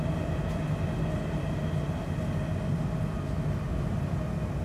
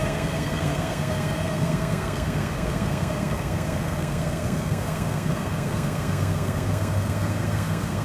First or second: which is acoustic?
first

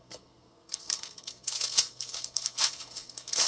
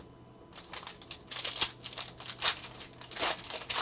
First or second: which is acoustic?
second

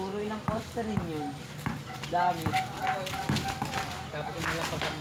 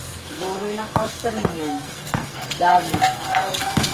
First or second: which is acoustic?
first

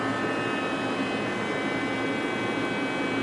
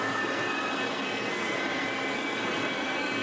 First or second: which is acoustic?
first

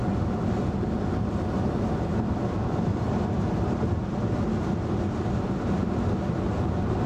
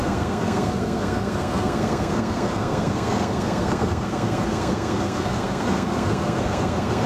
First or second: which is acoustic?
first